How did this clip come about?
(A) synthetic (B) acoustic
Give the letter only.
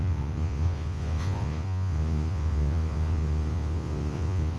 A